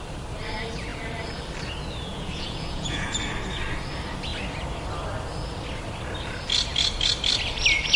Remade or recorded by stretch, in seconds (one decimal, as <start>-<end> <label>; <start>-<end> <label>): 0.0-2.1 recorded; 2.1-3.2 remade; 3.2-8.0 recorded